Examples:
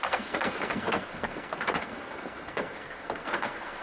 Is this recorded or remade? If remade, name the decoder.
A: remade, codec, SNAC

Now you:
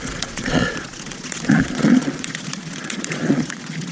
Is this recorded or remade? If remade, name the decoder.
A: remade, vocoder, Vocos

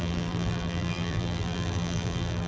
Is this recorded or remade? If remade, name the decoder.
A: remade, vocoder, BigVGAN v2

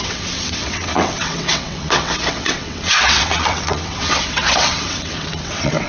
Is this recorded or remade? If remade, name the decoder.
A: remade, vocoder, WaveNeXt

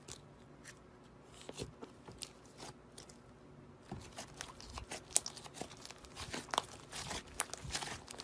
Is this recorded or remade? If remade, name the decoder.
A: recorded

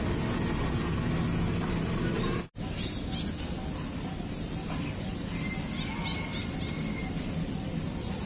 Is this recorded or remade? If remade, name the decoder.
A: recorded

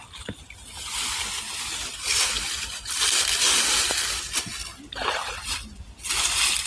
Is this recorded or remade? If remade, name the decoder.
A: recorded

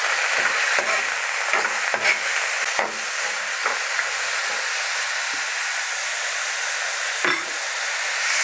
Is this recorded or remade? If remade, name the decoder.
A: recorded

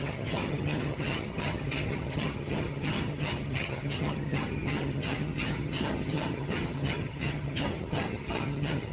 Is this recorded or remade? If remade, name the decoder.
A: remade, vocoder, HiFi-GAN